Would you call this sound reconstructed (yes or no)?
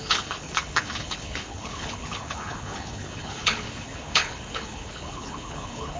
yes